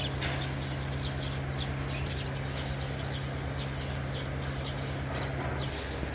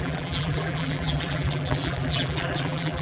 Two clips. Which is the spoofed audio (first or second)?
second